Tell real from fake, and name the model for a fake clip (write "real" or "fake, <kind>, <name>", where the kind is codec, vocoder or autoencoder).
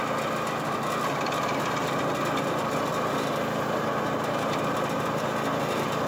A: real